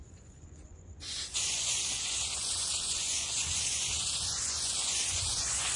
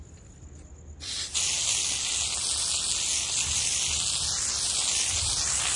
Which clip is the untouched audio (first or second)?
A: second